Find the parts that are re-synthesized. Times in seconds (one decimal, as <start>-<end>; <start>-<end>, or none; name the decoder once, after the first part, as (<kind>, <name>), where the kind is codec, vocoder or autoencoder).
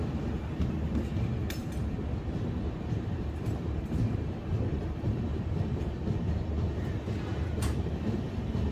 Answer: 1.6-6.0 (vocoder, BigVGAN v2); 7.3-7.9